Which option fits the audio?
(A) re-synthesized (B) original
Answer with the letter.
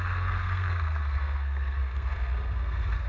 A